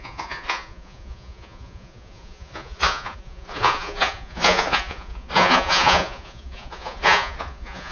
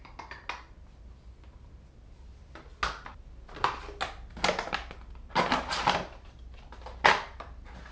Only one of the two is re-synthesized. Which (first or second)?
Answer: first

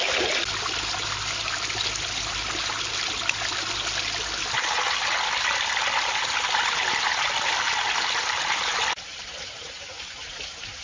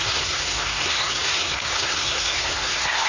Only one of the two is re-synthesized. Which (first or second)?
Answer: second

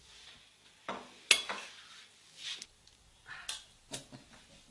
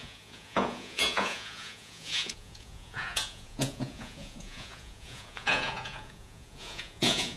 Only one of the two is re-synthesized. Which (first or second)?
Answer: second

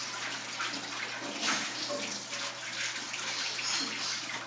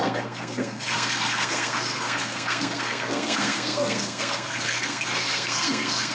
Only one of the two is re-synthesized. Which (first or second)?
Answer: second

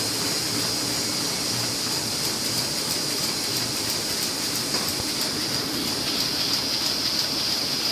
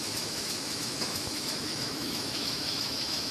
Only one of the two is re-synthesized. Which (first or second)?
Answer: second